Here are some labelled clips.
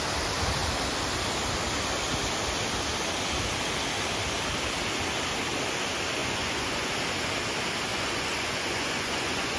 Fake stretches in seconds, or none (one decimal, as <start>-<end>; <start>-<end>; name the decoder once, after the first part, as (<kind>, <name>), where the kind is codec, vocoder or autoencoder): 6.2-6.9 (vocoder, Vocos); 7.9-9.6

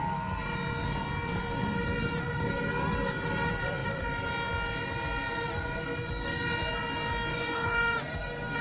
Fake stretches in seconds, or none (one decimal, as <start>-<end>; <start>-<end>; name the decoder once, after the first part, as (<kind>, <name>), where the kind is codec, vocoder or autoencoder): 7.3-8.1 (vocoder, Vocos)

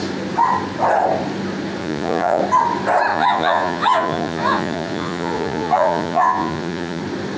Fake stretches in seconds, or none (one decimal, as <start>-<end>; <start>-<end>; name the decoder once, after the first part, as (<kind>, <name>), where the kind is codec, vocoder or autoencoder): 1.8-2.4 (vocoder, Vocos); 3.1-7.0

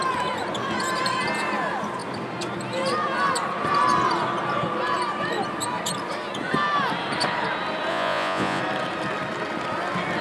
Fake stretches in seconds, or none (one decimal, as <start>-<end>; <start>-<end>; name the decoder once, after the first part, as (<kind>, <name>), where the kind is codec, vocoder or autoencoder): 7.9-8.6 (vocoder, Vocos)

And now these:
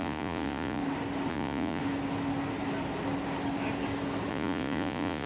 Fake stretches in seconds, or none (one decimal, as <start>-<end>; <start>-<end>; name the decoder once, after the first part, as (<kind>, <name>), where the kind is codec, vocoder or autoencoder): 0.0-0.8 (vocoder, Vocos); 1.3-1.8; 4.3-5.3

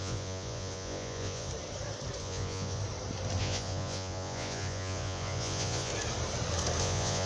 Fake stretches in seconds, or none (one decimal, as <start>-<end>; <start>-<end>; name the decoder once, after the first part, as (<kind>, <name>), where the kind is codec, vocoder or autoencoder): 0.0-1.5 (vocoder, Vocos); 2.2-2.8; 3.4-5.9; 6.8-7.3

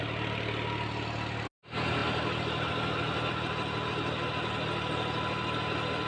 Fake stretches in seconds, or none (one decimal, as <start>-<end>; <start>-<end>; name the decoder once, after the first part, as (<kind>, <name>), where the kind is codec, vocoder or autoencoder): none